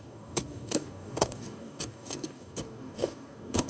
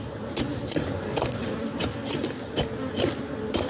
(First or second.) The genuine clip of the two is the second